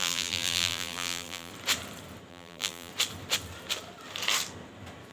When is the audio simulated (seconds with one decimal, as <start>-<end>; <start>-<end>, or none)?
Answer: 0.0-1.5; 2.3-2.9